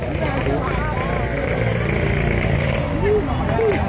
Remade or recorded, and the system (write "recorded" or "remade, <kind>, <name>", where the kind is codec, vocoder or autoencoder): recorded